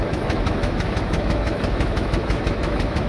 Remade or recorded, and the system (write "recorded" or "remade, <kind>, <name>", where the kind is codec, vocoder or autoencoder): remade, autoencoder, DAC-VAE